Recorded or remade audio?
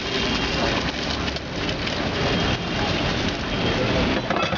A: recorded